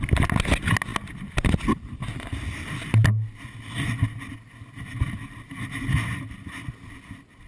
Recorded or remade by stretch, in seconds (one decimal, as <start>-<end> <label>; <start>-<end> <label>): 0.0-4.9 recorded; 4.9-6.7 remade; 6.7-7.5 recorded